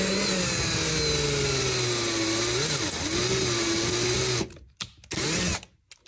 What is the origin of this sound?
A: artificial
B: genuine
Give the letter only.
B